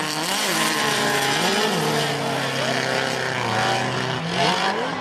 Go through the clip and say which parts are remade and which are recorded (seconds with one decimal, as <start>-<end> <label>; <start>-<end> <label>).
0.0-1.5 remade; 1.5-4.5 recorded; 4.5-5.0 remade